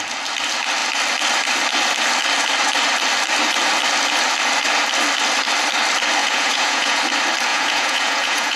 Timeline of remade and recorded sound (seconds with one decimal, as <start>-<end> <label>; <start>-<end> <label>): 0.0-6.2 recorded; 6.2-7.0 remade; 7.0-7.5 recorded; 7.5-8.6 remade